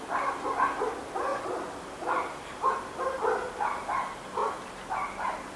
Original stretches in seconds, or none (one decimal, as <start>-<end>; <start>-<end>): 4.4-5.6